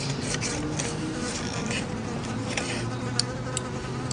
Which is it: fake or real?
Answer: real